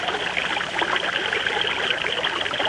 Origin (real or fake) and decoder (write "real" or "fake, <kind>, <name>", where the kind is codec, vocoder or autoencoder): real